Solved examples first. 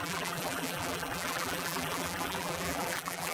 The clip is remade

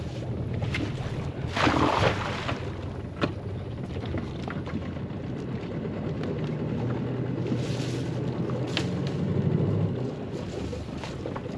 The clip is recorded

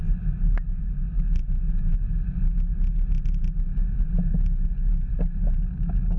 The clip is recorded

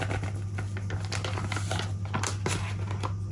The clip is recorded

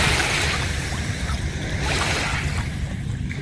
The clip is recorded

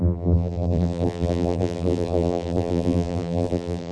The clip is remade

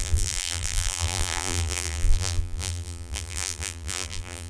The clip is remade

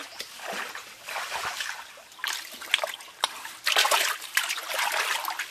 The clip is recorded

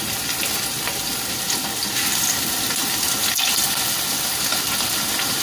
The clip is recorded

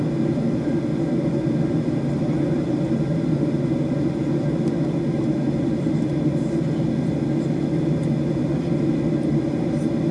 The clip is recorded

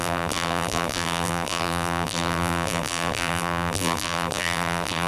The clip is remade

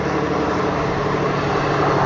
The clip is recorded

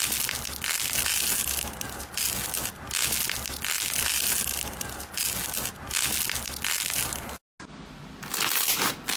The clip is recorded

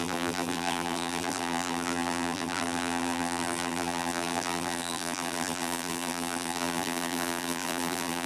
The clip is remade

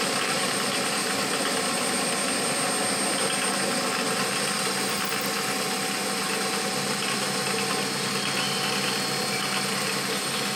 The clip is recorded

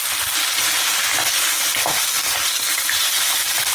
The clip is recorded